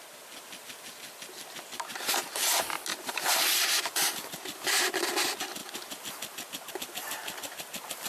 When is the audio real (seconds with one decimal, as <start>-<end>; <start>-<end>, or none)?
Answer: 0.0-2.9; 5.0-8.1